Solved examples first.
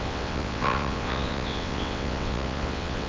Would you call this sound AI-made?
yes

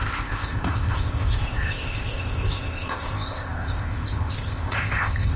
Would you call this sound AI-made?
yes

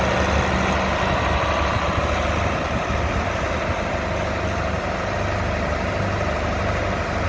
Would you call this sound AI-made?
no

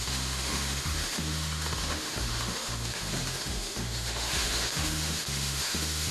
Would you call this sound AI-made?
yes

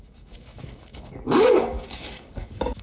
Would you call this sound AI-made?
yes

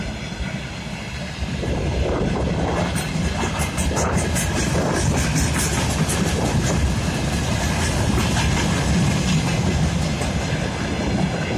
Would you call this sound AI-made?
no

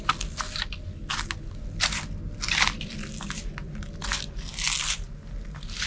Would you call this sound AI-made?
no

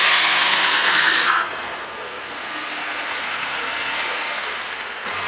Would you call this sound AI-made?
yes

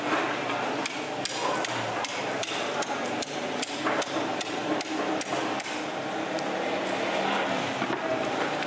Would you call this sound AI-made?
no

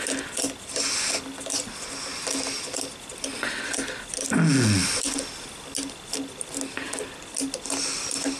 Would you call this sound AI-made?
no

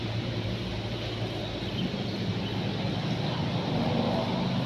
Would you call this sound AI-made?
no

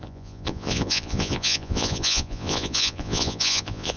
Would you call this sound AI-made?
yes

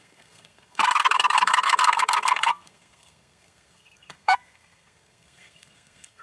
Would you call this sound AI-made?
yes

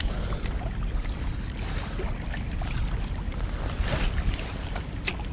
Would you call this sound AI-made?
no